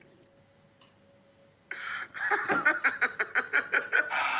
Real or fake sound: real